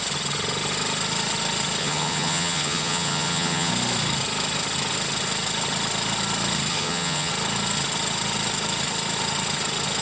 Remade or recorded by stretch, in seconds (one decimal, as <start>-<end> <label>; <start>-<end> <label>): 0.0-1.8 recorded; 1.8-3.7 remade; 3.7-6.7 recorded; 6.7-7.3 remade; 7.3-10.0 recorded